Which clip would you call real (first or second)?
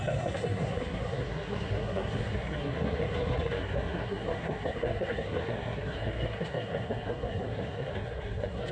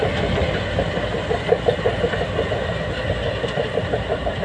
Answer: second